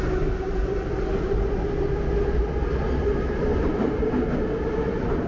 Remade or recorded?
recorded